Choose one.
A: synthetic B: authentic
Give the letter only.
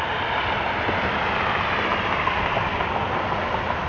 B